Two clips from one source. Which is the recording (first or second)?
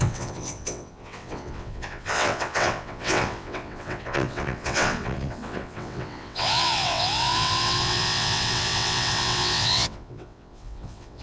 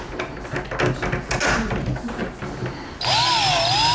second